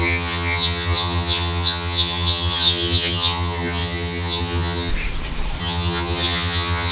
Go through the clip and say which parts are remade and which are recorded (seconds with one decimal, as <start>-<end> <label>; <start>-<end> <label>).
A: 0.0-4.9 remade; 4.9-5.6 recorded; 5.6-6.9 remade